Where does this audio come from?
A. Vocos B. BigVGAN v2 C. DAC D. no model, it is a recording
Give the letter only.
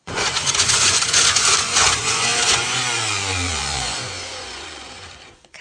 A